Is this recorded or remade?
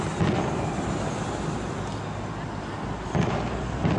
recorded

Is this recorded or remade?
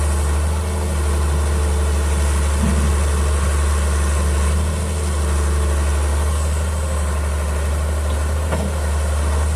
recorded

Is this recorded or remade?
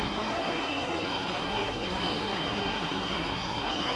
remade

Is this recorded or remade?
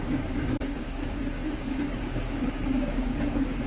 remade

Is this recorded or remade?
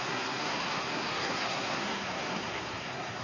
remade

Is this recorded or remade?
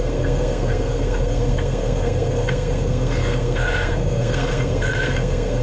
remade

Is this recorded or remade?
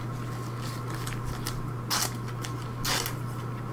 recorded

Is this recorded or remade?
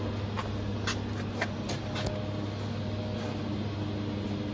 recorded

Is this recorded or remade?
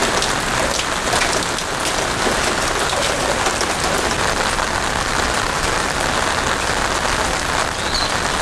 recorded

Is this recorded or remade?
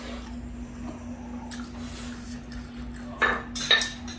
recorded